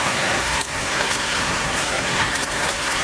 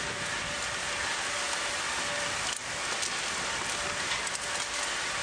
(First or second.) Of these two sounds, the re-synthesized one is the first